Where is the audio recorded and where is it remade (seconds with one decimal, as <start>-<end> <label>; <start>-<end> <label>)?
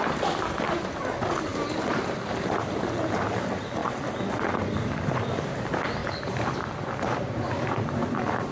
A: 0.0-0.9 remade; 0.9-3.8 recorded; 3.8-5.4 remade; 5.4-6.0 recorded; 6.0-7.4 remade; 7.4-8.5 recorded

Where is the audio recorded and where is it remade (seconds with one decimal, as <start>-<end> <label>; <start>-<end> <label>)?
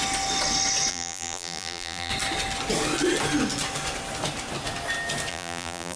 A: 0.0-0.9 recorded; 0.9-2.1 remade; 2.1-5.3 recorded; 5.3-6.0 remade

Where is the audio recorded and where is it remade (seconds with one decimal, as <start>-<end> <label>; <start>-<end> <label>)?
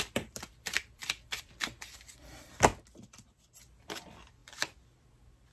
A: 0.0-2.7 remade; 2.7-3.6 recorded; 3.6-4.4 remade; 4.4-5.5 recorded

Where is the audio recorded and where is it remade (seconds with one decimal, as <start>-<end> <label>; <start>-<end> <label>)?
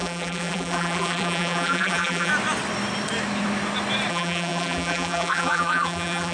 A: 0.0-2.3 remade; 2.3-4.1 recorded; 4.1-6.3 remade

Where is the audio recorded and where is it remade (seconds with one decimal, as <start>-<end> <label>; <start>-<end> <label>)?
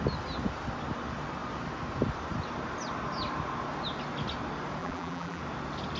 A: 0.0-4.8 recorded; 4.8-5.4 remade; 5.4-6.0 recorded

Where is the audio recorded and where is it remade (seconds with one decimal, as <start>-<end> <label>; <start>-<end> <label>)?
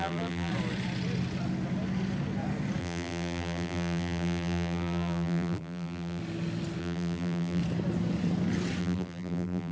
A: 0.0-0.5 remade; 0.5-2.8 recorded; 2.8-6.2 remade; 6.2-6.8 recorded; 6.8-7.6 remade; 7.6-8.8 recorded; 8.8-9.7 remade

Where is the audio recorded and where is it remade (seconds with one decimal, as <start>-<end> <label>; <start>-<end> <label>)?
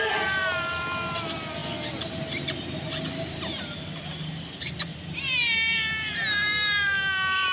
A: 0.0-4.9 recorded; 4.9-6.1 remade; 6.1-7.5 recorded